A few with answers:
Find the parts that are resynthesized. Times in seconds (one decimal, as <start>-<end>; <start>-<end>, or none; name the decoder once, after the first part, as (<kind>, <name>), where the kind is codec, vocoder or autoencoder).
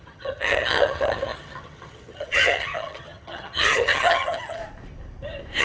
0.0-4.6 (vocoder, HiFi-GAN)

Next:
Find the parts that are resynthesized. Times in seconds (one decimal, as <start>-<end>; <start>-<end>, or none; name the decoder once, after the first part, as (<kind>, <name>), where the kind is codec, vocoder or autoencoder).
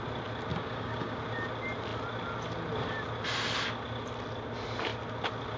0.5-1.2 (codec, DAC)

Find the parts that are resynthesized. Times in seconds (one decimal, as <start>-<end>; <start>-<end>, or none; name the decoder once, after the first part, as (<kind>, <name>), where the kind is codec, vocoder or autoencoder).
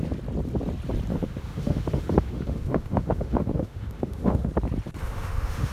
1.1-4.5 (autoencoder, DAC-VAE); 5.0-5.7